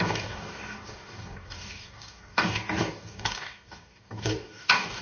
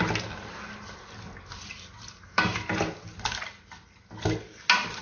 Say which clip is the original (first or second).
second